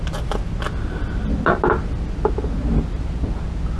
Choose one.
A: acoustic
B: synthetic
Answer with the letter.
A